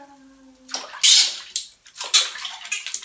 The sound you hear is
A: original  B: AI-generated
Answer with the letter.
A